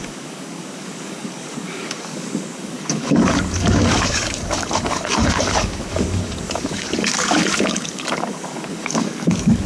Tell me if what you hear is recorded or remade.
remade